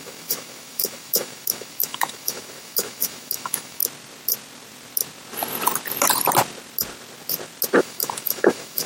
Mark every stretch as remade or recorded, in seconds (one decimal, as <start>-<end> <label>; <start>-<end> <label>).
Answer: 0.0-3.8 remade; 3.8-7.8 recorded; 7.8-8.9 remade